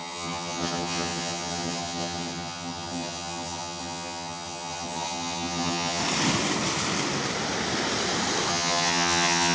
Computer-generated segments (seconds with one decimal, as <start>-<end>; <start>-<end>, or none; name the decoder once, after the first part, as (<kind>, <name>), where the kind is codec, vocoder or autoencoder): 0.0-6.0 (vocoder, HiFi-GAN); 8.5-9.5